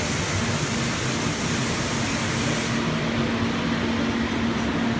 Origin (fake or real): real